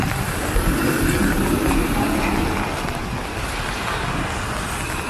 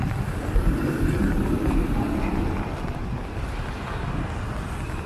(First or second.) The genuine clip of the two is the first